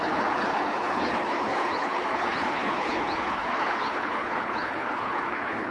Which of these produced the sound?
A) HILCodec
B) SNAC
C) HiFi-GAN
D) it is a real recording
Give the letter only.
A